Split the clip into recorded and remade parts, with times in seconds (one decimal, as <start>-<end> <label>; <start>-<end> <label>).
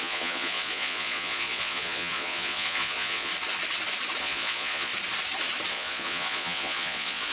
0.0-3.3 remade; 3.3-4.2 recorded; 4.2-4.9 remade; 4.9-5.7 recorded; 5.7-7.3 remade